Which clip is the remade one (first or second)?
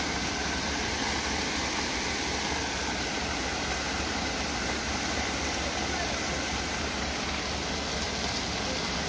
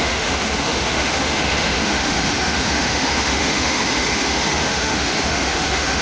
second